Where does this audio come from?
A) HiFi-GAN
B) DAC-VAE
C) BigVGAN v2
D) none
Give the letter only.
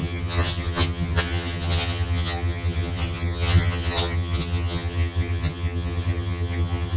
A